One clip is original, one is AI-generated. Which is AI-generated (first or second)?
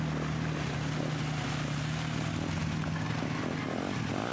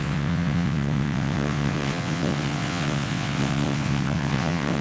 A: second